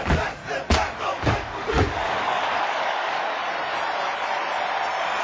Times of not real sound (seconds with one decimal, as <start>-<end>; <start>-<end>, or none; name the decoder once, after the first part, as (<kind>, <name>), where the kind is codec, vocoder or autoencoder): 0.0-0.4 (codec, DAC); 1.0-3.4